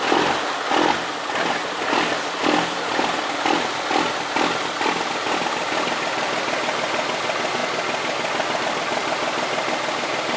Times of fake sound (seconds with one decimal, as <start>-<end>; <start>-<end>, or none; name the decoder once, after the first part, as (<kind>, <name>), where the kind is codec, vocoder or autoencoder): none